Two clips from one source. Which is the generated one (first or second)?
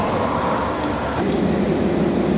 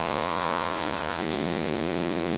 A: second